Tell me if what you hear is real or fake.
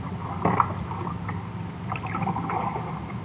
real